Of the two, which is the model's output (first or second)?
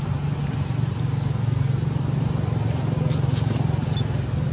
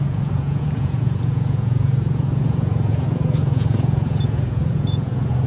second